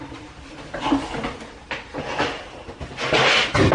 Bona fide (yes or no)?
yes